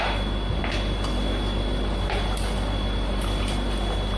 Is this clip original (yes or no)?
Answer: yes